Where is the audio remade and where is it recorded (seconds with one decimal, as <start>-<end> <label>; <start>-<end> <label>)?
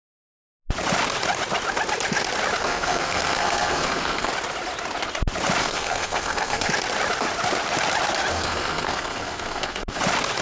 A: 0.0-2.6 recorded; 2.6-4.3 remade; 4.3-5.6 recorded; 5.6-6.7 remade; 6.7-8.3 recorded; 8.3-10.0 remade; 10.0-10.4 recorded